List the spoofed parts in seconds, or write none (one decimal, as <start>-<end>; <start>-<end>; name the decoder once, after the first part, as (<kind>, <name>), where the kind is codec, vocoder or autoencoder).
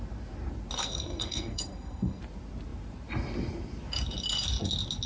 0.8-2.2 (codec, SNAC)